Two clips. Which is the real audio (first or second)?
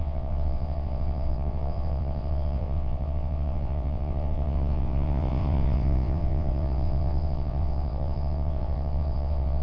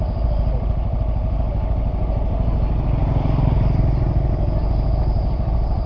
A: second